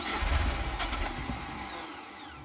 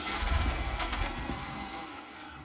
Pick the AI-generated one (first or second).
second